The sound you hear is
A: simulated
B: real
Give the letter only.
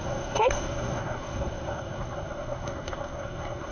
A